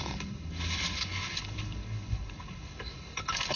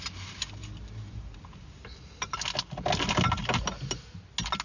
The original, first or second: second